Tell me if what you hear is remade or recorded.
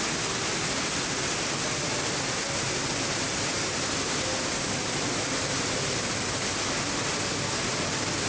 recorded